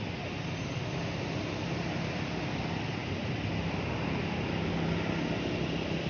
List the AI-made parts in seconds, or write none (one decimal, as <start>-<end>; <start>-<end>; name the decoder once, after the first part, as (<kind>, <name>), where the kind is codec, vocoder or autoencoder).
none